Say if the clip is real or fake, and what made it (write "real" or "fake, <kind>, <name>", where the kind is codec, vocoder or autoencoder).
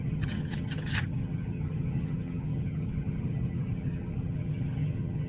fake, vocoder, HiFi-GAN